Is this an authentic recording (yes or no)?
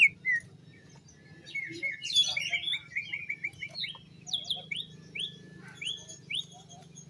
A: yes